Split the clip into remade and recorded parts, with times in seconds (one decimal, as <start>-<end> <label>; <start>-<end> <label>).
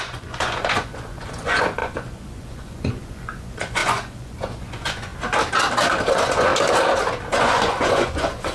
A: 0.0-5.1 remade; 5.1-6.1 recorded; 6.1-6.5 remade; 6.5-7.3 recorded; 7.3-8.5 remade